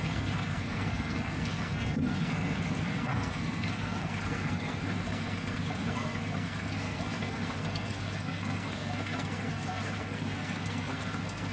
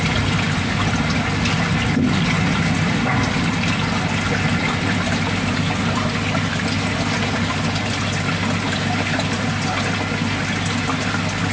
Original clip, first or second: second